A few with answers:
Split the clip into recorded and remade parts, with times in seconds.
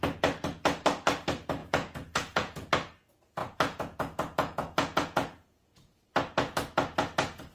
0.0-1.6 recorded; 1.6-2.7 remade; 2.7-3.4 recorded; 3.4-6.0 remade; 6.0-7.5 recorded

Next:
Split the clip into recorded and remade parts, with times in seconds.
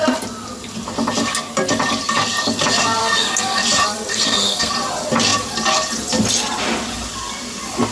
0.0-3.0 recorded; 3.0-3.6 remade; 3.6-4.1 recorded; 4.1-4.7 remade; 4.7-7.9 recorded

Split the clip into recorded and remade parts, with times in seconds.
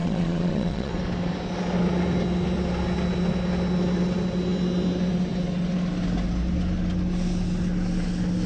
0.0-0.9 remade; 0.9-8.5 recorded